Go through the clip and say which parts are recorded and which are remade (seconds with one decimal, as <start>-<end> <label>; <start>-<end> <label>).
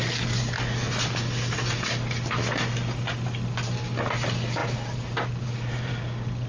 0.0-4.6 recorded; 4.6-5.9 remade; 5.9-6.5 recorded